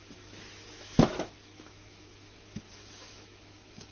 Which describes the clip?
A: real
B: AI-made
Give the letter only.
B